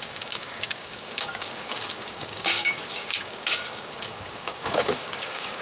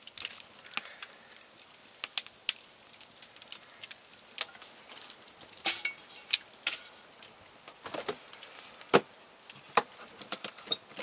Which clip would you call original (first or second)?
second